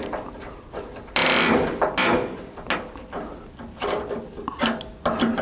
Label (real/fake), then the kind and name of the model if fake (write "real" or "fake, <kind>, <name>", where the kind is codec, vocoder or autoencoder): real